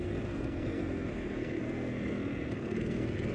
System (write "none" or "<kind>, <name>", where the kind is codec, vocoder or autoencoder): codec, SNAC